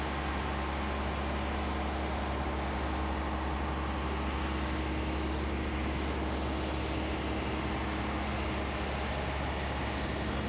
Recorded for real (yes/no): yes